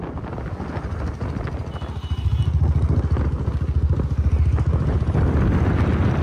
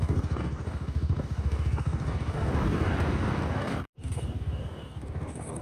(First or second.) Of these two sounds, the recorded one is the first